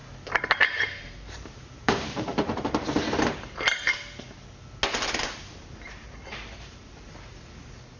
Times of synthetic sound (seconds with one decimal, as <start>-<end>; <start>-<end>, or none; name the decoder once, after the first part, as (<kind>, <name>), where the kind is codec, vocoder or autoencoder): 0.6-2.3 (vocoder, BigVGAN v2); 5.6-8.0